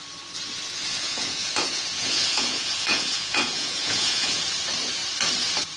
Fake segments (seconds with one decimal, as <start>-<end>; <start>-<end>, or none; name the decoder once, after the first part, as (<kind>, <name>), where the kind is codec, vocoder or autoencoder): 0.9-4.4 (vocoder, Vocos)